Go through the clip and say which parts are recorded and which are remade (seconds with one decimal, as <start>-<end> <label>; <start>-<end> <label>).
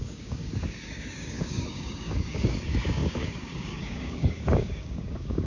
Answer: 0.0-5.5 remade